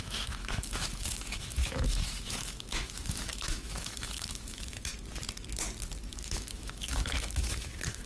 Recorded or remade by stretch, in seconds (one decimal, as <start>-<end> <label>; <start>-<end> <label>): 0.0-4.9 remade; 4.9-6.1 recorded; 6.1-8.1 remade